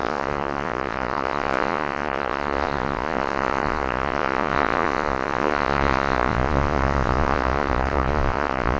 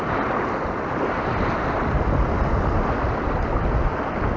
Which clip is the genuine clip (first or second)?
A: second